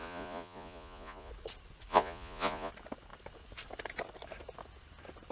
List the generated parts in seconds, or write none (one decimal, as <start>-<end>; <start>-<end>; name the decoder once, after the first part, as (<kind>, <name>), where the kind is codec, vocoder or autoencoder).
0.0-1.3 (vocoder, Vocos); 1.9-2.7